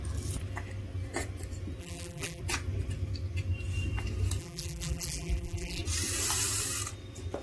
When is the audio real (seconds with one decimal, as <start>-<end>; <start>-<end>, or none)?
0.0-1.8; 2.4-4.4; 5.8-7.4